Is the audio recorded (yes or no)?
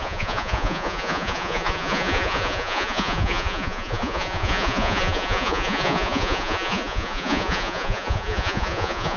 no